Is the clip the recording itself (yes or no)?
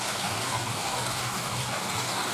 no